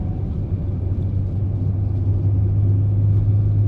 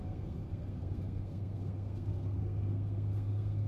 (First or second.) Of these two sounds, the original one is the first